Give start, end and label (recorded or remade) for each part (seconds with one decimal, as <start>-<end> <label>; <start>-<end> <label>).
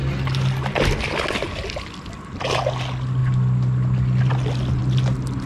0.0-5.5 recorded